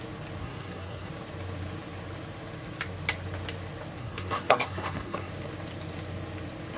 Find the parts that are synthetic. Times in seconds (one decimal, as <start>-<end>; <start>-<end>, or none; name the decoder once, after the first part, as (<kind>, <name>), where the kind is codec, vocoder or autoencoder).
0.4-1.1 (codec, SNAC); 4.0-5.3